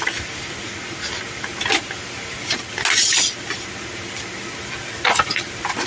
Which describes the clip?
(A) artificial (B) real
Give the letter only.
B